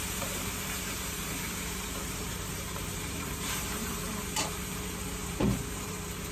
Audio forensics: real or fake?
fake